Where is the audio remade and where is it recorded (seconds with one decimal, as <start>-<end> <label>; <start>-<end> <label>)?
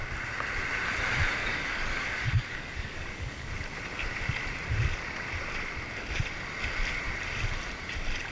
0.0-1.4 recorded; 1.4-3.5 remade; 3.5-8.3 recorded